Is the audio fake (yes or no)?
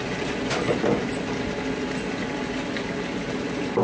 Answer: no